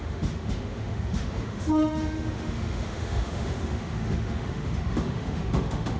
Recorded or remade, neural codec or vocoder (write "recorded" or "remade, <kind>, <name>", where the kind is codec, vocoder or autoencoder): remade, autoencoder, DAC-VAE